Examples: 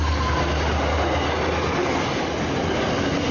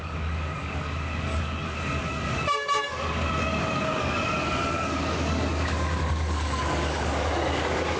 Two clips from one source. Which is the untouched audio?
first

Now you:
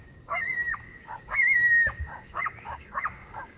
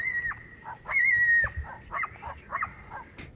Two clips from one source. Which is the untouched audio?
second